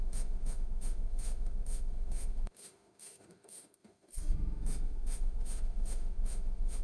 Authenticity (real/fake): fake